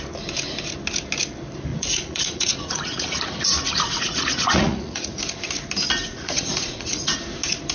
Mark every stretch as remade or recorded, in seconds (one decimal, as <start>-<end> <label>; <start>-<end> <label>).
0.0-1.7 recorded; 1.7-5.2 remade; 5.2-6.0 recorded; 6.0-7.2 remade; 7.2-7.7 recorded